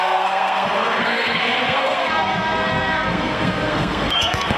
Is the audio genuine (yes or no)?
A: no